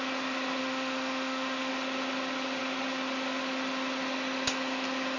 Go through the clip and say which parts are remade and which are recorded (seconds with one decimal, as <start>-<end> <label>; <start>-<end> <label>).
0.0-0.6 recorded; 0.6-1.7 remade; 1.7-5.2 recorded